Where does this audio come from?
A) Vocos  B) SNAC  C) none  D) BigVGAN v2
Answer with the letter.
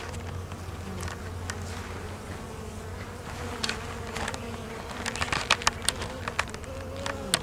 C